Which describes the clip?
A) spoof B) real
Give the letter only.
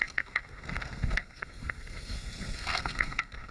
A